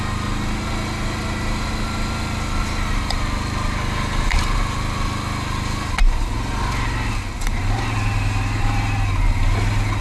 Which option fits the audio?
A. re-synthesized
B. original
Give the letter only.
B